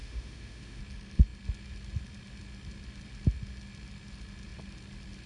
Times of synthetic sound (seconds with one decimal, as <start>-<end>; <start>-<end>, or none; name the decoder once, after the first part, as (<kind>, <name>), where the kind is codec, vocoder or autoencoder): 0.0-0.8 (autoencoder, DAC-VAE)